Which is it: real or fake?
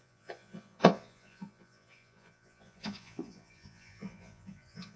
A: fake